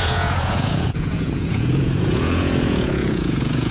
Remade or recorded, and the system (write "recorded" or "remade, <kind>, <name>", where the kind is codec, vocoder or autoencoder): remade, vocoder, Vocos